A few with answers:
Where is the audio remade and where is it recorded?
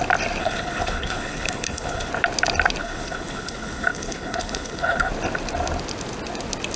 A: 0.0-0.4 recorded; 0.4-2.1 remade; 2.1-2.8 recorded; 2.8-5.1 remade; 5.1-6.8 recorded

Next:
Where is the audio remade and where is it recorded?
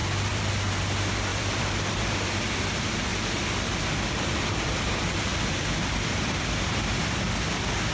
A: 0.0-0.7 remade; 0.7-1.3 recorded; 1.3-2.0 remade; 2.0-3.1 recorded; 3.1-4.8 remade; 4.8-5.3 recorded; 5.3-6.5 remade; 6.5-7.9 recorded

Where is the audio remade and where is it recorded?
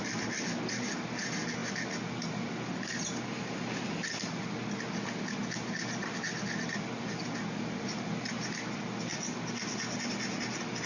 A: 0.0-10.9 recorded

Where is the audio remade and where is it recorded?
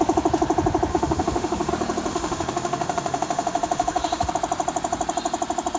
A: 0.0-0.9 recorded; 0.9-1.7 remade; 1.7-2.1 recorded; 2.1-4.3 remade; 4.3-5.8 recorded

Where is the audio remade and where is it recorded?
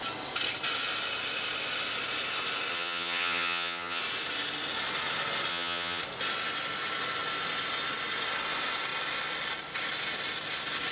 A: 0.0-2.7 recorded; 2.7-4.0 remade; 4.0-5.5 recorded; 5.5-6.0 remade; 6.0-10.9 recorded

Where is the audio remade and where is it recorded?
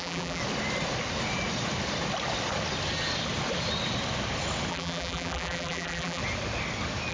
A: 0.0-0.4 remade; 0.4-4.7 recorded; 4.7-6.2 remade; 6.2-7.1 recorded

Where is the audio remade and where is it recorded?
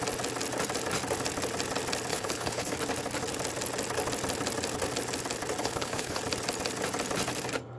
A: 0.0-2.1 recorded; 2.1-2.7 remade; 2.7-5.6 recorded; 5.6-6.2 remade; 6.2-7.8 recorded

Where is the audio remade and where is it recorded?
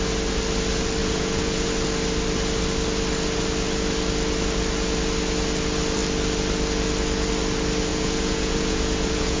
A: 0.0-1.0 recorded; 1.0-1.7 remade; 1.7-7.9 recorded; 7.9-9.4 remade